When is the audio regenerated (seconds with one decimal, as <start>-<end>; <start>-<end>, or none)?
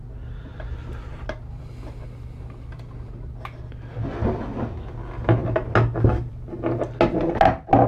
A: none